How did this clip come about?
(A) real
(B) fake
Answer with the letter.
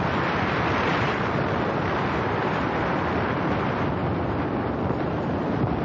A